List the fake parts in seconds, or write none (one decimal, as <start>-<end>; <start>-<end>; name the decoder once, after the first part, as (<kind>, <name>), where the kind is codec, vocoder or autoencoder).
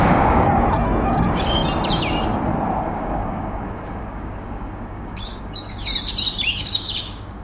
0.0-1.6 (codec, DAC); 2.8-5.9; 6.5-7.4